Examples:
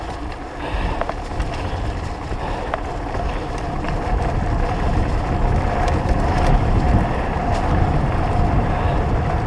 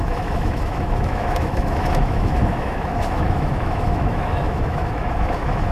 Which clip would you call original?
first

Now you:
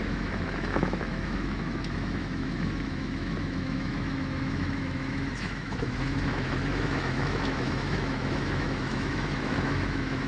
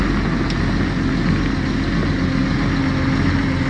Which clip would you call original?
second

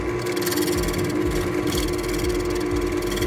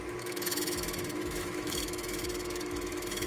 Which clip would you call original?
first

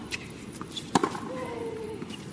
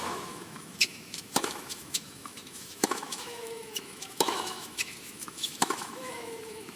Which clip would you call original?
first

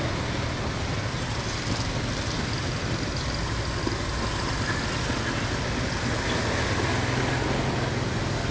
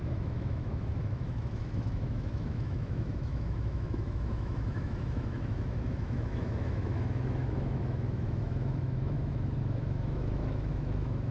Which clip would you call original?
first